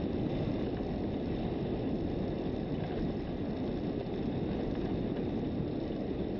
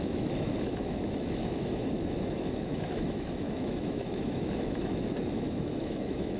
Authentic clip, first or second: first